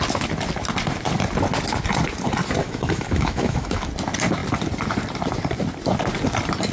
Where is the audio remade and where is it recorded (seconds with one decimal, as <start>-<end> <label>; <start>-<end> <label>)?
0.0-2.6 recorded; 2.6-3.9 remade; 3.9-6.7 recorded